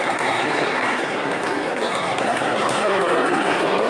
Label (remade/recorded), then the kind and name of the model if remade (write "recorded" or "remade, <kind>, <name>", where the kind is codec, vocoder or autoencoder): remade, codec, SNAC